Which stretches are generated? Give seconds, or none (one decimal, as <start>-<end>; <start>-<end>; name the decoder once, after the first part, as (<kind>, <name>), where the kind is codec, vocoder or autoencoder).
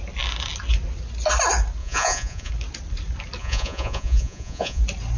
1.8-2.5 (vocoder, Vocos); 3.4-4.8